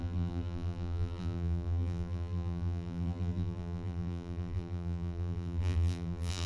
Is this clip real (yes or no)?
no